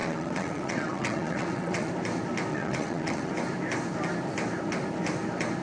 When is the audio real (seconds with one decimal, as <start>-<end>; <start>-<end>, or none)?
1.9-2.5; 3.3-5.6